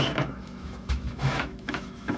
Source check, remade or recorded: remade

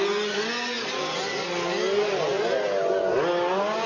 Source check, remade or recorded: recorded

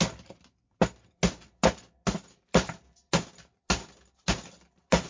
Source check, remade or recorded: recorded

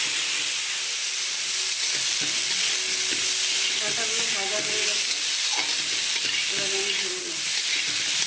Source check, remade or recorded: recorded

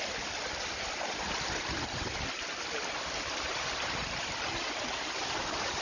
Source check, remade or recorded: recorded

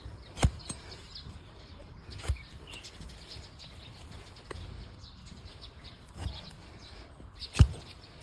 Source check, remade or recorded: recorded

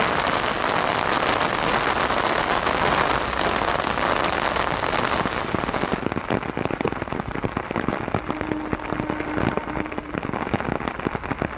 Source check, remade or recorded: recorded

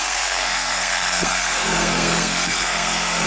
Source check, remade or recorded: remade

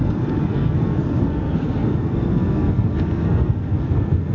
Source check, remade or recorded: remade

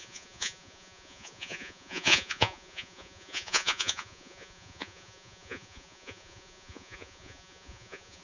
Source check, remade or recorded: remade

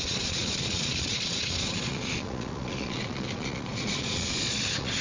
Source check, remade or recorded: remade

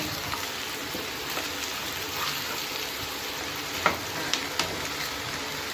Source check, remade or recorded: recorded